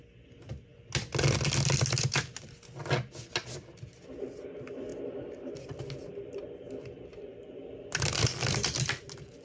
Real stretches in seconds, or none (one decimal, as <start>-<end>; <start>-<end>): 0.0-4.9; 8.8-9.4